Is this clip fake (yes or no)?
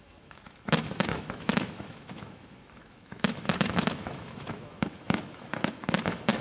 yes